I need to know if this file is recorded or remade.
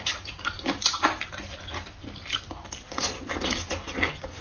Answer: recorded